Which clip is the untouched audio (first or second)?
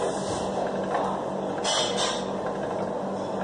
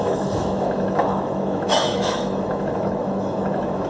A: first